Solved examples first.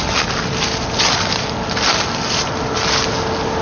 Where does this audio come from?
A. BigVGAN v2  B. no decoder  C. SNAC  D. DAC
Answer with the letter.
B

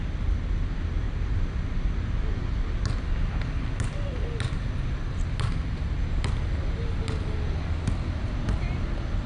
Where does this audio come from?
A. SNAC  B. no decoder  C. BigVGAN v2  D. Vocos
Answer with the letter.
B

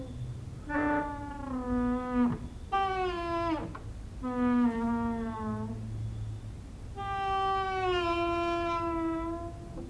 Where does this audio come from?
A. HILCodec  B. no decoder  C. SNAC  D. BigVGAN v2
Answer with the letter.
B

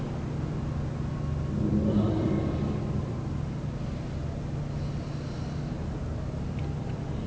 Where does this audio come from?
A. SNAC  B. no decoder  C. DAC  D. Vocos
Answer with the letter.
B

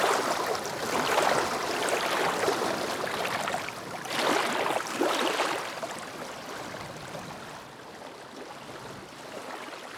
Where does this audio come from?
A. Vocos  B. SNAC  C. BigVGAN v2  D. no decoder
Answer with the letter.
D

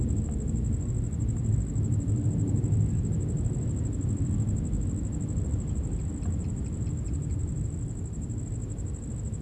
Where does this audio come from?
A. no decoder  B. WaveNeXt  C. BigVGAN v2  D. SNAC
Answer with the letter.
A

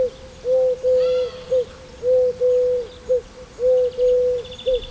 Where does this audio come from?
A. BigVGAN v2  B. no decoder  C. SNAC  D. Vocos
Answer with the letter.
B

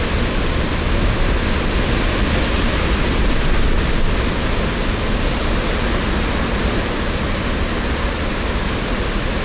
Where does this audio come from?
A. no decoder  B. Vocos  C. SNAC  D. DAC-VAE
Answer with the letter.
A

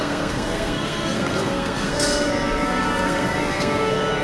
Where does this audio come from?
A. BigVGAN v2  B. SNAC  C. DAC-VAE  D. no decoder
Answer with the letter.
B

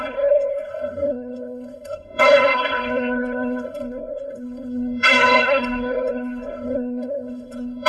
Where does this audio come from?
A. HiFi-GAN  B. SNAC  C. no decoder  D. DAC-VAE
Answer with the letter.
B